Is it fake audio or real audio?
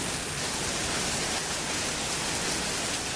real